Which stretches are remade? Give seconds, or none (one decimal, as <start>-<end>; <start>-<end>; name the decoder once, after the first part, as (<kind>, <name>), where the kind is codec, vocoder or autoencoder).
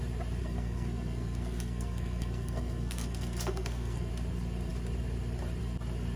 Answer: 0.4-4.1 (codec, SNAC)